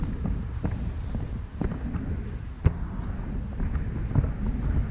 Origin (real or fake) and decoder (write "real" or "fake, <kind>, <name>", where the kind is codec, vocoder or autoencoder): real